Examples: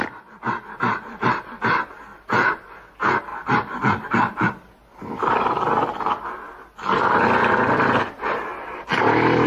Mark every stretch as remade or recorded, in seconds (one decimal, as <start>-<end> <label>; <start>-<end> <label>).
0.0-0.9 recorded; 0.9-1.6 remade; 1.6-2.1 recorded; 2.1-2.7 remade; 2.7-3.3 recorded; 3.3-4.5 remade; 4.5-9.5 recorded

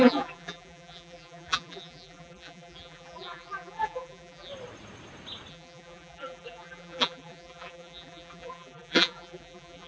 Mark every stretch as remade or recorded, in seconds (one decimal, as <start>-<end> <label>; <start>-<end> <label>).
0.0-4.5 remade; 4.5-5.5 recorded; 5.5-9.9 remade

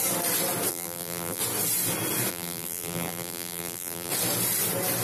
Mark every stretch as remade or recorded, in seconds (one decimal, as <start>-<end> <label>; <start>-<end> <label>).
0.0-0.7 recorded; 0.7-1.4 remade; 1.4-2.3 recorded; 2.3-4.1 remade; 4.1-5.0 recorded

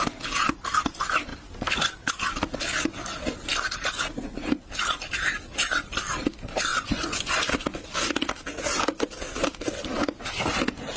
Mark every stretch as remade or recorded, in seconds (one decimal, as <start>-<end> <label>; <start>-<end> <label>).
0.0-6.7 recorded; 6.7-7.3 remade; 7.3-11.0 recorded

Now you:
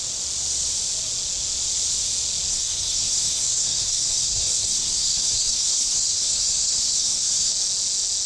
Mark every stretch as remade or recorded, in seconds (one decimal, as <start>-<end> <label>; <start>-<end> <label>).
0.0-2.5 recorded; 2.5-7.5 remade; 7.5-8.3 recorded

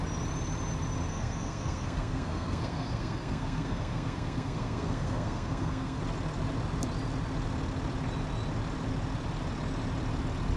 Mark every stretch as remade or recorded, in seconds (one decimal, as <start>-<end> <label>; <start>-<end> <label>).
0.0-1.1 recorded; 1.1-6.0 remade; 6.0-10.6 recorded

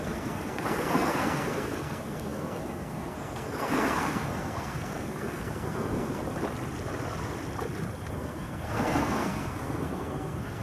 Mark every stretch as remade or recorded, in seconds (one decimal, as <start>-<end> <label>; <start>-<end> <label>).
0.0-6.2 remade; 6.2-8.1 recorded; 8.1-10.6 remade

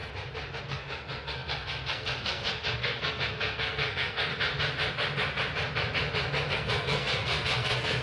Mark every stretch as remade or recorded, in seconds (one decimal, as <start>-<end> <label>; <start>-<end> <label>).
0.0-0.6 recorded; 0.6-4.3 remade; 4.3-6.5 recorded; 6.5-8.0 remade